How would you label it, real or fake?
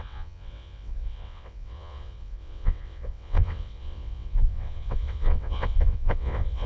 fake